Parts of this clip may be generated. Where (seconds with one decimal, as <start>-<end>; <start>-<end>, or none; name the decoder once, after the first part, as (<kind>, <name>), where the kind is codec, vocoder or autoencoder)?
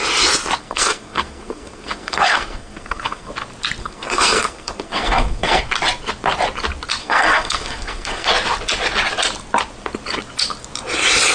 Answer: 0.6-3.3 (codec, SNAC); 3.8-5.7; 7.0-8.3